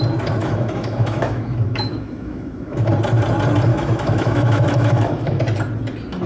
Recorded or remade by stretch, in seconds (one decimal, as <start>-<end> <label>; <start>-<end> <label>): 0.0-0.4 recorded; 0.4-2.9 remade; 2.9-3.7 recorded; 3.7-5.4 remade; 5.4-6.3 recorded